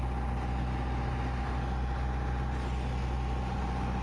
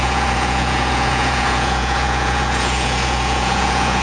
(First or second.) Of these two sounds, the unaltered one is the first